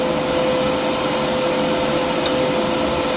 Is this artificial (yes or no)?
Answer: no